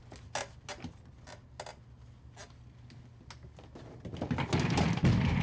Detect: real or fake real